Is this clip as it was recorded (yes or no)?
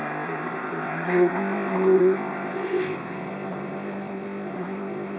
no